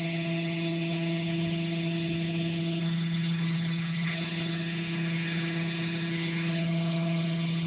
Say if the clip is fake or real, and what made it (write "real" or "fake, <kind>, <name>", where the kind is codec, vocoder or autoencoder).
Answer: fake, codec, HILCodec